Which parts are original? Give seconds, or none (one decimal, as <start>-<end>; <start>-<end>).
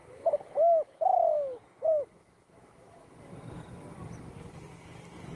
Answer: 3.2-5.4